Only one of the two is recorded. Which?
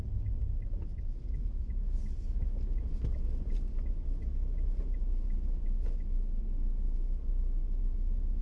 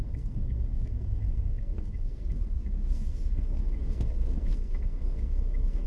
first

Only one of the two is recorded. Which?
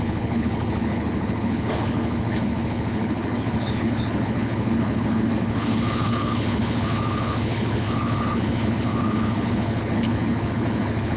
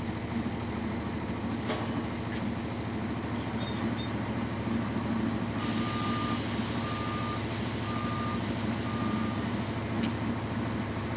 second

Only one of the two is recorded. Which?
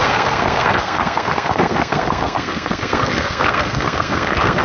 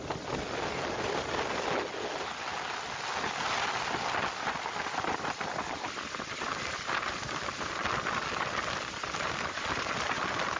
second